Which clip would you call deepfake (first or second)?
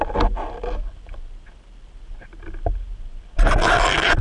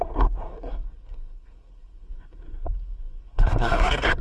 second